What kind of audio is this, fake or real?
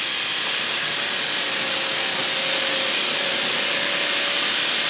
real